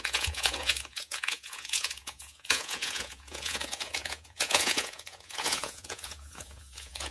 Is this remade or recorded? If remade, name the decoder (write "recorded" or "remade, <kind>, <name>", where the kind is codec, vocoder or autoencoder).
remade, vocoder, Vocos